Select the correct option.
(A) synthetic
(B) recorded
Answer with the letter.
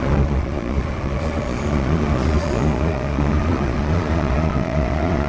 A